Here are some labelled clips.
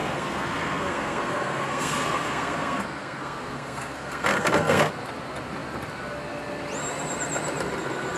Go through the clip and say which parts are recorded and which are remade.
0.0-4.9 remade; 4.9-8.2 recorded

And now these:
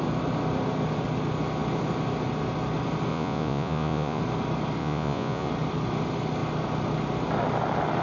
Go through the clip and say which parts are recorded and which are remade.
0.0-3.1 recorded; 3.1-4.2 remade; 4.2-4.8 recorded; 4.8-5.5 remade; 5.5-8.0 recorded

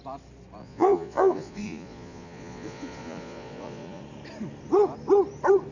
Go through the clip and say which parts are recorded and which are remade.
0.0-0.6 recorded; 0.6-4.0 remade; 4.0-5.7 recorded

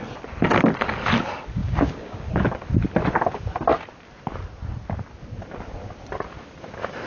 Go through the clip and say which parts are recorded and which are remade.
0.0-1.6 recorded; 1.6-2.3 remade; 2.3-7.1 recorded

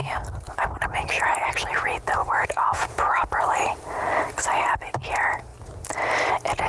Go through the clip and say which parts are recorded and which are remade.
0.0-2.2 recorded; 2.2-3.5 remade; 3.5-6.7 recorded

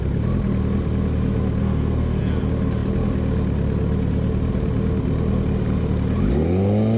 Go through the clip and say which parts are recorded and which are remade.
0.0-1.6 recorded; 1.6-2.2 remade; 2.2-7.0 recorded